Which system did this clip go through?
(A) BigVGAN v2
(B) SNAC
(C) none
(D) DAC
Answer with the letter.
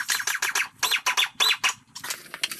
C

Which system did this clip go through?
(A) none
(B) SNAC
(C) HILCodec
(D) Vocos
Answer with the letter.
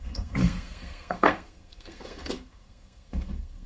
B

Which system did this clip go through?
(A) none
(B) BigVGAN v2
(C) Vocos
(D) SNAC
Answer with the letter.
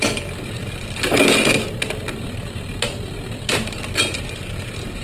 A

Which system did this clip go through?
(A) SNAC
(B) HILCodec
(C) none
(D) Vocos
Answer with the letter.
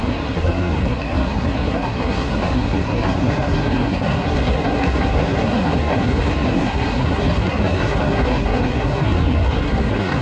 A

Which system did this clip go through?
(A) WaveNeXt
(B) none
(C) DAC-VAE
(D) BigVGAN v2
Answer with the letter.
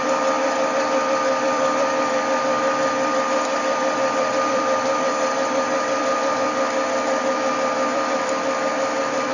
D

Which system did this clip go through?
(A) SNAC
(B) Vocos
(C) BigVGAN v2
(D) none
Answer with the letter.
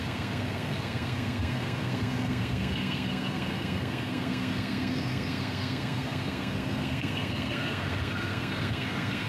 A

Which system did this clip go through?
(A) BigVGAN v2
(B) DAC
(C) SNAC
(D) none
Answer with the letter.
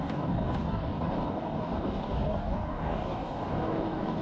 B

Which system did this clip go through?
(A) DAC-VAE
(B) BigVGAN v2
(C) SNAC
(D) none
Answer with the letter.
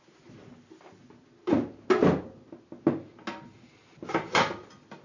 D